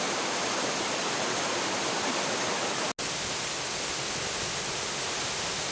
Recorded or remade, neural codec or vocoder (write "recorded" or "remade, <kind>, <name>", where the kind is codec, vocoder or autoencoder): recorded